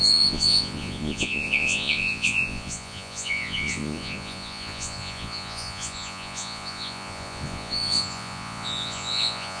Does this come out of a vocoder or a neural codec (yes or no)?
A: yes